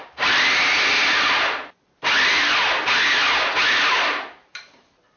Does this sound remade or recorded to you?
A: recorded